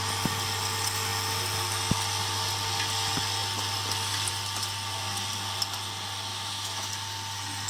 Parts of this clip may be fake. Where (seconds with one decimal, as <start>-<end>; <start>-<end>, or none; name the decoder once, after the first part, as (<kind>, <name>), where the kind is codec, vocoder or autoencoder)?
6.3-6.9 (autoencoder, DAC-VAE)